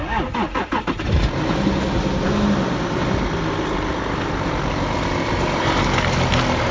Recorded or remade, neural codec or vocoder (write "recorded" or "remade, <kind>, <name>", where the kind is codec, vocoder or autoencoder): recorded